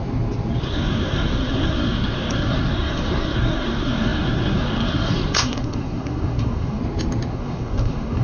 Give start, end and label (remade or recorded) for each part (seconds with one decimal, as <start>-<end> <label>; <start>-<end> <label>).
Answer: 0.0-0.6 recorded; 0.6-6.8 remade; 6.8-7.3 recorded; 7.3-8.2 remade